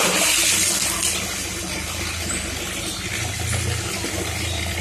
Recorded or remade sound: recorded